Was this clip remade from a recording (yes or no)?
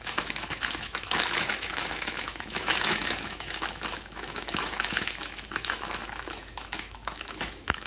yes